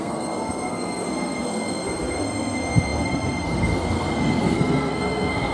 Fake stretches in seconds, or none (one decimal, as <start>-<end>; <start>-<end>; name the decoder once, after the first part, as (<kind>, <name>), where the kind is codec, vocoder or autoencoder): 0.0-5.5 (codec, SNAC)